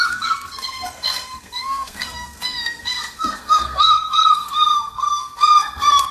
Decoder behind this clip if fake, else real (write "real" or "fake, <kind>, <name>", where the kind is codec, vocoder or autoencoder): fake, codec, SNAC